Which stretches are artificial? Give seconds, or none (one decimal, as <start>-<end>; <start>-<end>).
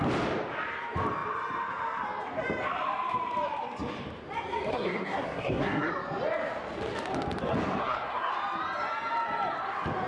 4.7-5.9; 7.8-8.3